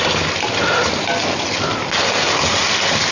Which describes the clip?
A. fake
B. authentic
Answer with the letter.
B